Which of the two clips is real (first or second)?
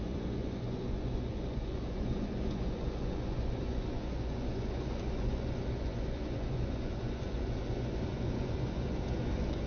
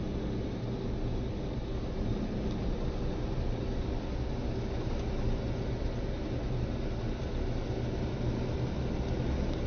second